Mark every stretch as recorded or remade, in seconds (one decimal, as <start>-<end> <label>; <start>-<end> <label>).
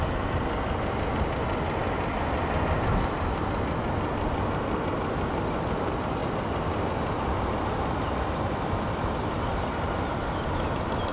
0.0-11.1 recorded